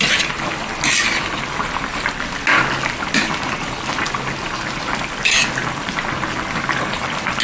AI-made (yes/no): no